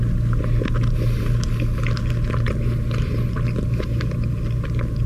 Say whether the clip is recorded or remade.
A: recorded